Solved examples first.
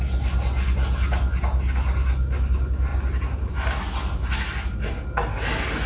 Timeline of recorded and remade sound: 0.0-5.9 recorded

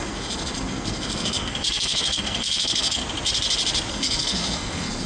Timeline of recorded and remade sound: 0.0-3.0 remade; 3.0-3.9 recorded; 3.9-5.1 remade

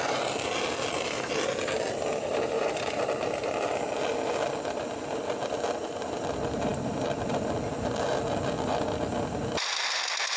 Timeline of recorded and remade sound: 0.0-10.4 recorded

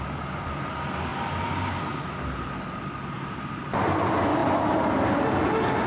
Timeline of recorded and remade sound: 0.0-5.9 recorded

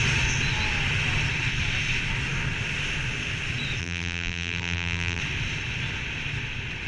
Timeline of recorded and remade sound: 0.0-3.8 recorded; 3.8-5.2 remade; 5.2-6.9 recorded

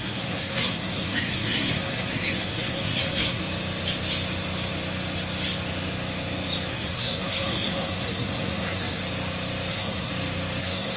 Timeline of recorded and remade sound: 0.0-3.4 remade; 3.4-6.7 recorded; 6.7-9.0 remade; 9.0-9.7 recorded; 9.7-10.1 remade; 10.1-10.6 recorded; 10.6-11.0 remade

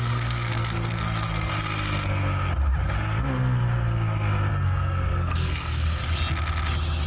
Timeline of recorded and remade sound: 0.0-1.5 remade; 1.5-4.5 recorded; 4.5-6.0 remade; 6.0-7.1 recorded

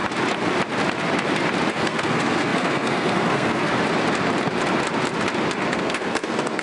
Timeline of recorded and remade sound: 0.0-1.7 recorded; 1.7-3.7 remade; 3.7-5.7 recorded; 5.7-6.6 remade